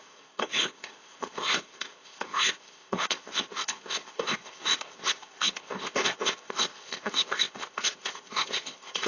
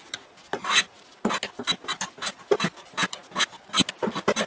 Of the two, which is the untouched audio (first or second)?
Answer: second